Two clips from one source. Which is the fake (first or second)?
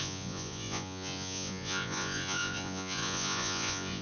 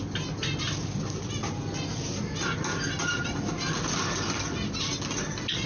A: first